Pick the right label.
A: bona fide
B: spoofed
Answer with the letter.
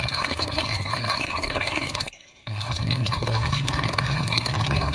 B